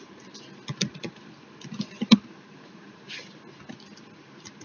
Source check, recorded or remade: recorded